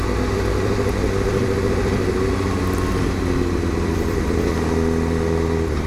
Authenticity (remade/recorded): recorded